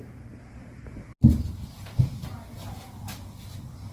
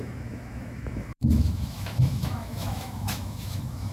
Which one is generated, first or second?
second